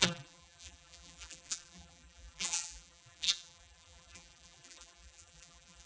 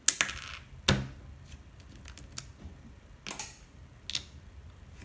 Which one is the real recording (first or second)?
second